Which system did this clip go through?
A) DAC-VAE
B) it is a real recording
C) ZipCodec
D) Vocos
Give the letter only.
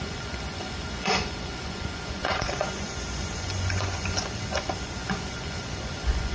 D